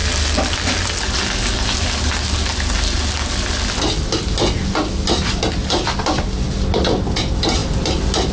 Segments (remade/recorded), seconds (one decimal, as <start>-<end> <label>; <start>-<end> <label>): 0.0-8.3 recorded